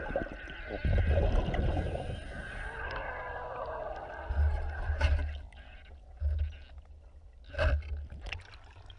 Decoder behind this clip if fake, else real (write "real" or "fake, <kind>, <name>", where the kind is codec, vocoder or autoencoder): real